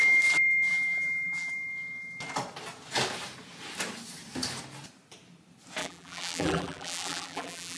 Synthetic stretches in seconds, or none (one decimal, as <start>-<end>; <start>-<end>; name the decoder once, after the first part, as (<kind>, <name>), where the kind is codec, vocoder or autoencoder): 0.7-1.5 (vocoder, BigVGAN v2); 5.8-7.8